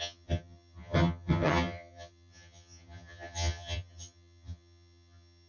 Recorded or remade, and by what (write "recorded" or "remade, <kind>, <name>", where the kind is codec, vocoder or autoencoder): remade, vocoder, HiFi-GAN